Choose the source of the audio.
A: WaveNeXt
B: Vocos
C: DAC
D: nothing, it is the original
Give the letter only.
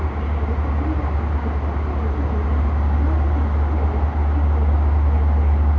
D